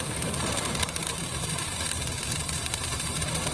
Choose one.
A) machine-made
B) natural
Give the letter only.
A